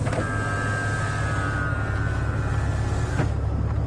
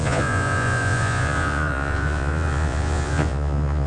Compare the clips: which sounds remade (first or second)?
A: second